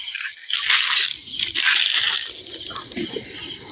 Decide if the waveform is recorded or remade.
recorded